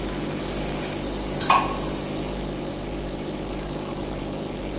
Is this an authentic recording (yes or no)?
no